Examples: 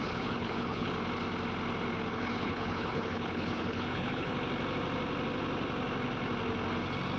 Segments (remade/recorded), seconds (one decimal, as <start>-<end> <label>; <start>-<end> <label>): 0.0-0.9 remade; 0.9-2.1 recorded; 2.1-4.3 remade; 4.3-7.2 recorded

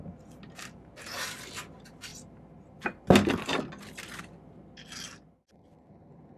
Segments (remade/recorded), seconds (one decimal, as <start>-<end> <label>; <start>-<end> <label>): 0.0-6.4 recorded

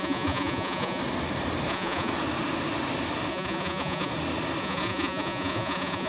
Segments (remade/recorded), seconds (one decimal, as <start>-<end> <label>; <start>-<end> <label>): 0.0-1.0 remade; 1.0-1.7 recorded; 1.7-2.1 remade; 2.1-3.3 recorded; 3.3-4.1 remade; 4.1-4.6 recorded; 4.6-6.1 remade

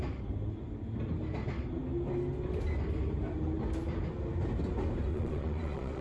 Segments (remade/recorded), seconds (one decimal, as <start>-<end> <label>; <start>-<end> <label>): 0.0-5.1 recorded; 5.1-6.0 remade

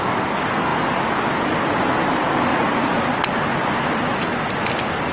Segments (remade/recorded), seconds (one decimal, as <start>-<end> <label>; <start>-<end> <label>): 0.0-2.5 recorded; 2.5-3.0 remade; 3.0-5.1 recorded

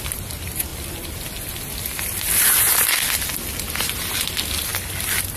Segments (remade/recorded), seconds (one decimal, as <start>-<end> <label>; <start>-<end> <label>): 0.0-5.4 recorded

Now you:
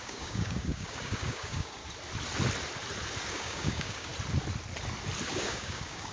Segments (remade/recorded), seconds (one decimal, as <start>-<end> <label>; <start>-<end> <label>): 0.0-1.8 remade; 1.8-3.3 recorded; 3.3-4.1 remade; 4.1-5.3 recorded; 5.3-6.1 remade

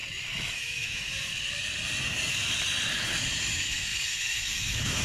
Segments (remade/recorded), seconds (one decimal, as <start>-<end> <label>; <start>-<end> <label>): 0.0-0.5 recorded; 0.5-1.3 remade; 1.3-3.5 recorded; 3.5-5.0 remade